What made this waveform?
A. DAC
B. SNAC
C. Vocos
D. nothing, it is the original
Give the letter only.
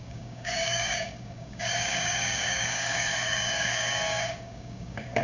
A